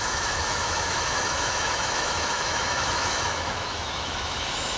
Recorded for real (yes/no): no